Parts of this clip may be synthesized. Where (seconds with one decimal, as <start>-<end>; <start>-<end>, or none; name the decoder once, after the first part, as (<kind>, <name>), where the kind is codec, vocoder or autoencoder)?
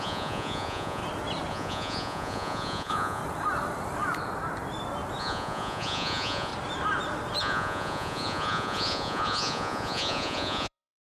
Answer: 0.0-1.0 (vocoder, Vocos); 1.5-3.2; 5.2-6.5; 7.4-11.0